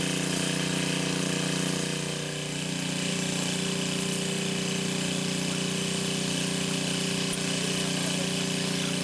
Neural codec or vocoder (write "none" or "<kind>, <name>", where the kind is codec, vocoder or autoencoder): none